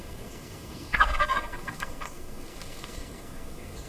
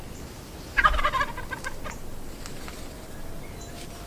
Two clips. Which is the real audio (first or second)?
second